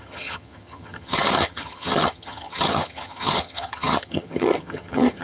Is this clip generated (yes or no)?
yes